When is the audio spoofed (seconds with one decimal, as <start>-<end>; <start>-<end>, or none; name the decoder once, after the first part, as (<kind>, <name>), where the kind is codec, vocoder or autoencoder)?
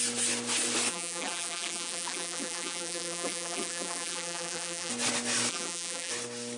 0.9-4.9 (vocoder, BigVGAN v2); 5.5-6.1